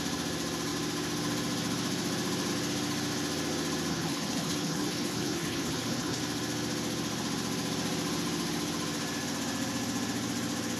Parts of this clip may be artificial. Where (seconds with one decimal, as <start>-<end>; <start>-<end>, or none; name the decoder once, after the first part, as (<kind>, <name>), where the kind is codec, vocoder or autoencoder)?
3.9-6.2 (codec, HILCodec)